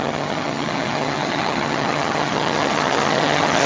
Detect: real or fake fake